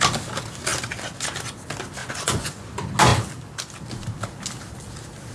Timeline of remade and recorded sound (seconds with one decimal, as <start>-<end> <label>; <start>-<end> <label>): 0.0-2.0 recorded; 2.0-2.7 remade; 2.7-5.3 recorded